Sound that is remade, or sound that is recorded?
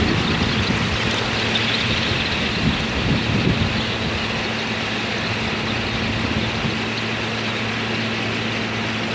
recorded